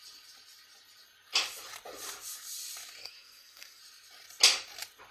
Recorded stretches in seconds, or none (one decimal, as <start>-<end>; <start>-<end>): 0.0-3.0; 3.8-5.1